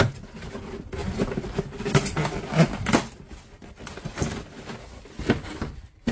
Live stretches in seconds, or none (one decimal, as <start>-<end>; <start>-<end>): 0.0-6.1